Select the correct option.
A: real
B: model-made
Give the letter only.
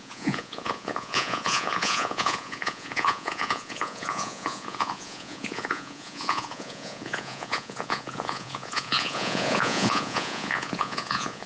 B